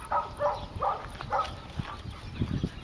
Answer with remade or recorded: recorded